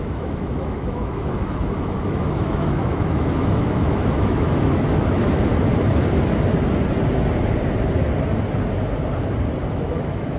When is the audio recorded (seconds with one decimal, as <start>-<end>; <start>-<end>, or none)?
5.5-9.7